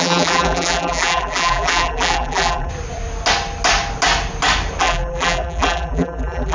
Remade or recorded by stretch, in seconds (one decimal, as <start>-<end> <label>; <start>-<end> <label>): 0.0-2.7 remade; 2.7-4.8 recorded; 4.8-6.5 remade